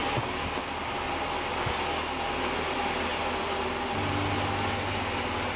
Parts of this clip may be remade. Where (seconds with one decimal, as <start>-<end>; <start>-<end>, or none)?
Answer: none